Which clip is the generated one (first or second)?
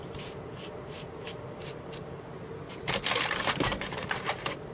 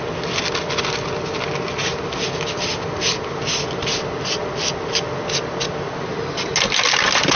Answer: first